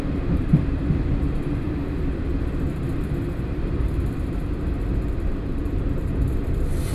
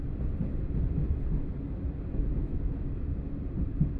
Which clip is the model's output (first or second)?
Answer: first